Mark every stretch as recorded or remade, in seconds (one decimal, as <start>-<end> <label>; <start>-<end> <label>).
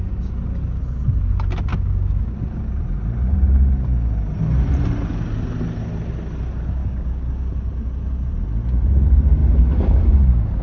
0.0-1.7 recorded; 1.7-2.3 remade; 2.3-6.8 recorded; 6.8-7.5 remade; 7.5-10.6 recorded